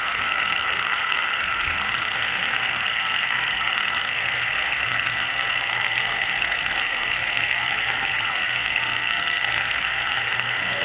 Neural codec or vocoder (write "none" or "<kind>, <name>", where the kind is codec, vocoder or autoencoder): codec, SNAC